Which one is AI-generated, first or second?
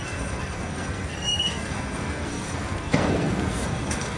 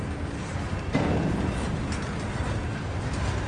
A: first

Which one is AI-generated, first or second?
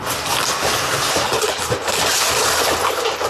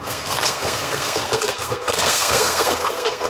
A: second